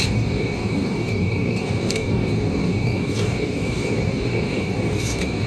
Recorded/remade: remade